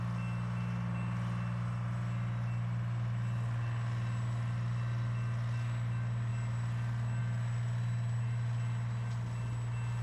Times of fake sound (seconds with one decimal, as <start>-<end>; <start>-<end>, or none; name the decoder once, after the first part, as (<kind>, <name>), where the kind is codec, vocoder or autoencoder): none

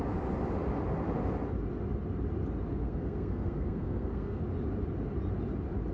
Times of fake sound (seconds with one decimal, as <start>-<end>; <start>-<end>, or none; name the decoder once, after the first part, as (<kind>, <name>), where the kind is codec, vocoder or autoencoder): 2.7-4.4 (codec, SNAC)